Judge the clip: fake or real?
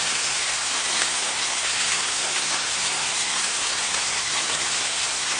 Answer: fake